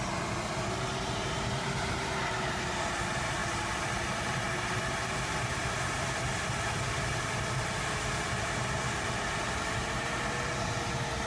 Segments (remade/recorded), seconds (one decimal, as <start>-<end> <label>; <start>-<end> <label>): 0.0-11.3 recorded